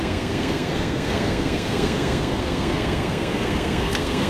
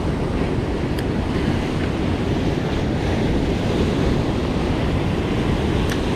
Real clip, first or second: second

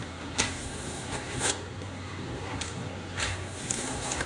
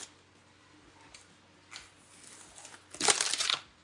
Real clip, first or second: second